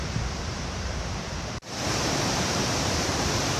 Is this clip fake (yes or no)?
yes